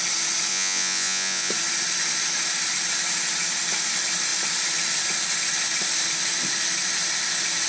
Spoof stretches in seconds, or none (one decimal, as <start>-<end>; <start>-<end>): 0.5-1.5